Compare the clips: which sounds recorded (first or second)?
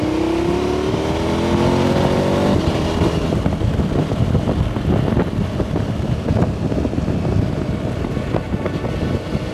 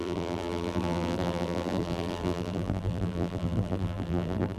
first